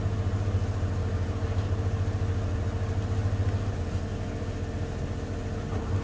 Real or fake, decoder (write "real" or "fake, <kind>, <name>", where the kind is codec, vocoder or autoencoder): real